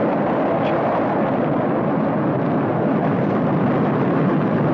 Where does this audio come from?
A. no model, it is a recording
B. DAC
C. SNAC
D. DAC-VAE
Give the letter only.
A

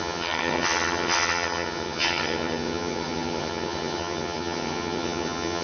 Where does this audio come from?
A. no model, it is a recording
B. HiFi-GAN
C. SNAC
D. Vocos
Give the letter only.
B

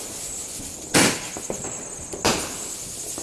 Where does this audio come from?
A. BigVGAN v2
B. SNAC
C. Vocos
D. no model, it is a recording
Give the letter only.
D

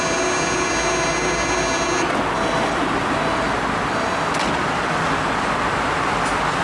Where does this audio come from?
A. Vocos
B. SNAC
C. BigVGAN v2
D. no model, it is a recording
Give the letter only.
D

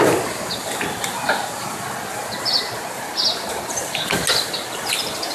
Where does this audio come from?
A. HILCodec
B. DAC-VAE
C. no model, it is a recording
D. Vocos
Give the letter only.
C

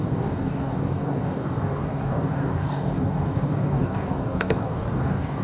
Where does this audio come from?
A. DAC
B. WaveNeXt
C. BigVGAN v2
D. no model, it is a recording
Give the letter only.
A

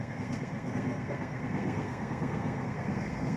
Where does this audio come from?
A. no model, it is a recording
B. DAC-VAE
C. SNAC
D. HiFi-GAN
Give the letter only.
C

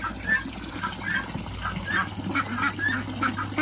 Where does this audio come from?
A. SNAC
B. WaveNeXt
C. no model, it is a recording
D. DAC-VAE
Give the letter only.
C